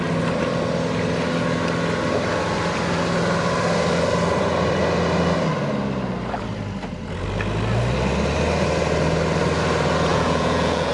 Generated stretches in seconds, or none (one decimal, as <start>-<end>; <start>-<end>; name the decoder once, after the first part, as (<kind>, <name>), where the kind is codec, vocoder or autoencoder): 10.1-10.9 (vocoder, Vocos)

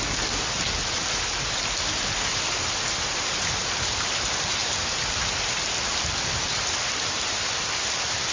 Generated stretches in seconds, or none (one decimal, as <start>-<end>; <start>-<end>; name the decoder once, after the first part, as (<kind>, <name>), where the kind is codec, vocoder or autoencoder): none